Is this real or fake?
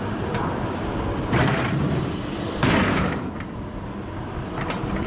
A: fake